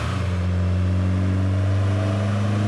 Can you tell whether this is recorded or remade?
recorded